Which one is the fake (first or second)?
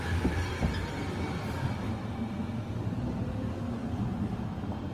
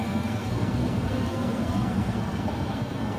second